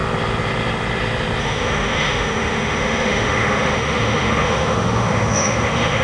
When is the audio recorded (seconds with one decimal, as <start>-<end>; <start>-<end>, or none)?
0.0-1.4